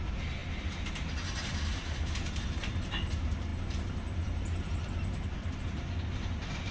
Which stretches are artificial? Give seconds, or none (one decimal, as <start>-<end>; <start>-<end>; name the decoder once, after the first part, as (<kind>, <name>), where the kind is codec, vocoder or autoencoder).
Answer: none